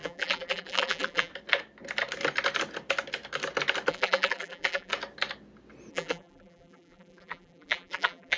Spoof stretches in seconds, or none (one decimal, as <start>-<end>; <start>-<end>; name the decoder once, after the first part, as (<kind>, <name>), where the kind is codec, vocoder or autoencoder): 0.0-1.3 (vocoder, BigVGAN v2); 3.9-4.9; 5.9-8.4